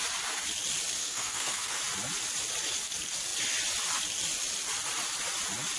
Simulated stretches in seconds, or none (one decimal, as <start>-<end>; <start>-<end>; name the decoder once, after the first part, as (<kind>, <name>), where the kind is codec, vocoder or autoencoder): 1.0-1.8 (codec, SNAC)